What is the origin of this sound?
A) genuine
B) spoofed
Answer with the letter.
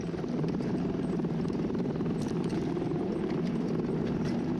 B